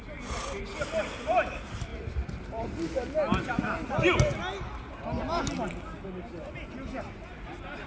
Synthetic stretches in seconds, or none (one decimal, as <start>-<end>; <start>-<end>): none